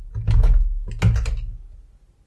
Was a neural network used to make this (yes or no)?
no